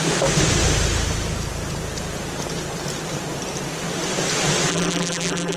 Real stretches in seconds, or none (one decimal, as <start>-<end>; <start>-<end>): 0.0-4.7